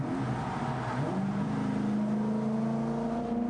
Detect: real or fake real